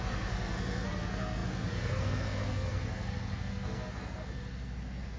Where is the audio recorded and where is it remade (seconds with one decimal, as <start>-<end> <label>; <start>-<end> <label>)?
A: 0.0-5.2 remade

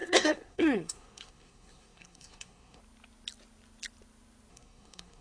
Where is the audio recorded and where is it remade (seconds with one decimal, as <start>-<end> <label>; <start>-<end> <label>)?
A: 0.0-2.8 remade; 2.8-4.5 recorded; 4.5-5.2 remade